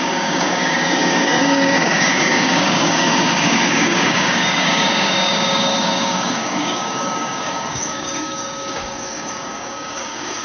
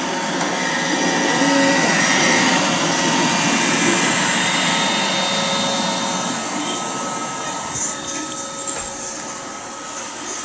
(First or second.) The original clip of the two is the second